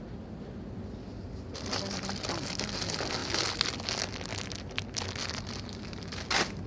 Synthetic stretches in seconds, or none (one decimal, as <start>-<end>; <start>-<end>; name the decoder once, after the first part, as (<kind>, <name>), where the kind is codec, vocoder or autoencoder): none